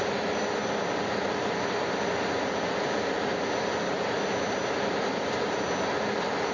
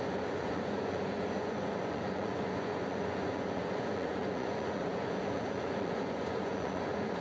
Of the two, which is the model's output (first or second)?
second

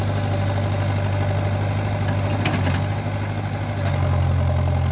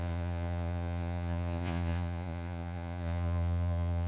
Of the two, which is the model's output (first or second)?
second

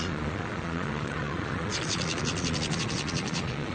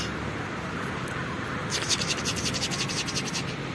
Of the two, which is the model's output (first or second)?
first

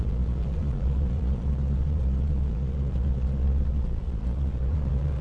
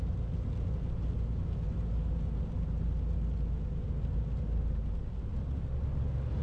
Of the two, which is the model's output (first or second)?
first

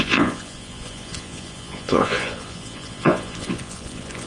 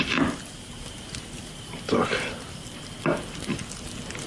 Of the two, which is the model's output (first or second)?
first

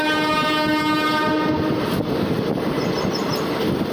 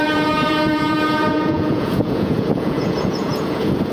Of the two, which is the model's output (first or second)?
second